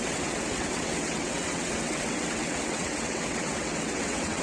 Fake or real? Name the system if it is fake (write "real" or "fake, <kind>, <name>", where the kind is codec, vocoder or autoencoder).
fake, vocoder, WaveNeXt